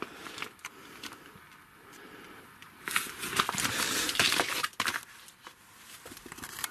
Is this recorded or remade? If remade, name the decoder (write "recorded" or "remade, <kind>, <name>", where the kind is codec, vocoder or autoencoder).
recorded